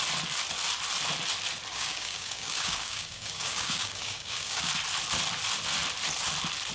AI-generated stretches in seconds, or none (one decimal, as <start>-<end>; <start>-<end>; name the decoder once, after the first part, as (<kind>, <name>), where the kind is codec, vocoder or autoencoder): 1.7-4.7 (codec, DAC)